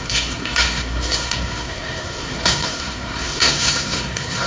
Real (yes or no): no